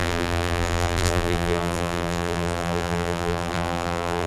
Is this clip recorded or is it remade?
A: remade